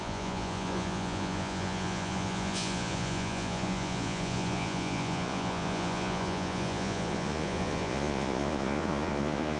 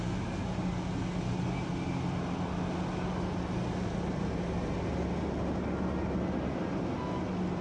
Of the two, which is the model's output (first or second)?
first